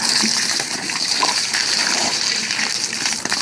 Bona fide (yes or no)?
no